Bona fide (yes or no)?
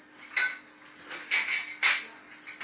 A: yes